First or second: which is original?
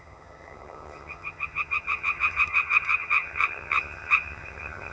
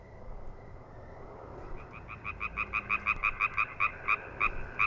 second